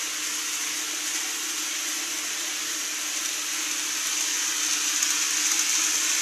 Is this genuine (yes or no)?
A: yes